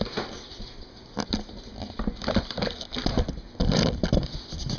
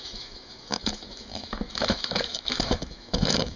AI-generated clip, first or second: second